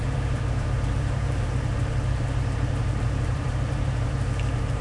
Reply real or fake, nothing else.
fake